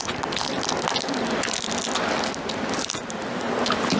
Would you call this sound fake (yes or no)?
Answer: no